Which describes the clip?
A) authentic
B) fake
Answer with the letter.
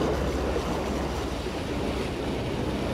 A